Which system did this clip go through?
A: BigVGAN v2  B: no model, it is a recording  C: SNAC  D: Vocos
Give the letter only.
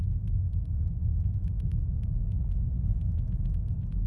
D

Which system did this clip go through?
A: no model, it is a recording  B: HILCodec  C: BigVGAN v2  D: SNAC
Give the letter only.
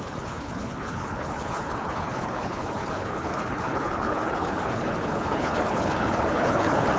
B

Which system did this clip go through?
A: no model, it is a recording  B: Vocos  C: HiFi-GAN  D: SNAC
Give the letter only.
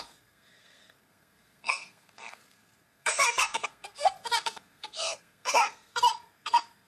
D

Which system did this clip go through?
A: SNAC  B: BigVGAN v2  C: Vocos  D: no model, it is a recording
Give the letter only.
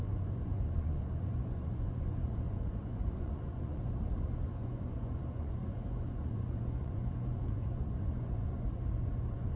C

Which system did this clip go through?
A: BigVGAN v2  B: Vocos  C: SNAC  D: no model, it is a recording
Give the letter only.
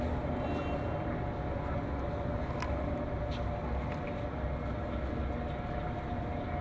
D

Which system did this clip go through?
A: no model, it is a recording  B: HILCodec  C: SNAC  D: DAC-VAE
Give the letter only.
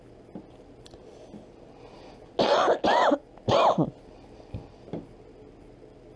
A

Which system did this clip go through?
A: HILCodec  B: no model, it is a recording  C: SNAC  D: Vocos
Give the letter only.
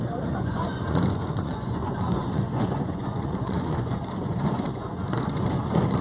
D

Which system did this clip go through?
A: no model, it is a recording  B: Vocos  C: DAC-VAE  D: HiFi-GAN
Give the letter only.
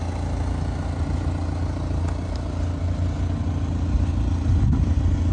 A